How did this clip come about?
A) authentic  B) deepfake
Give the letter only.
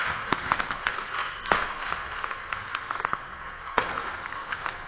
B